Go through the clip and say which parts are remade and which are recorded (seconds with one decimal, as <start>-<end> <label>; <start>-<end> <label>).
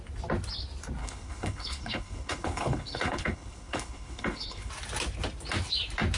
0.0-1.0 recorded; 1.0-4.7 remade; 4.7-6.2 recorded